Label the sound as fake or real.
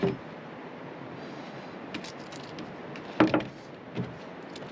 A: real